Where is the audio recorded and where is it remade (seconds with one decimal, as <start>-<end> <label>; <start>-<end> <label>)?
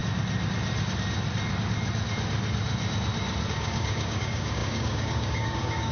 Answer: 0.0-3.5 recorded; 3.5-5.9 remade